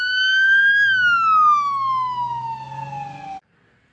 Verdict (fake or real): real